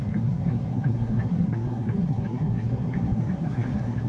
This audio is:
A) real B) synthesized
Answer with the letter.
B